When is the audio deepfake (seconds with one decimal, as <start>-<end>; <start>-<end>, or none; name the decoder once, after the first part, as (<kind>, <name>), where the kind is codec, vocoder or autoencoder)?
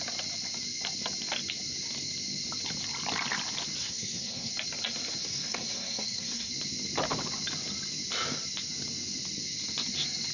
3.8-4.5 (codec, SNAC); 5.2-6.5